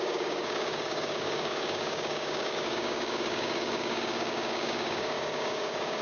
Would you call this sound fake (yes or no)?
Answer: yes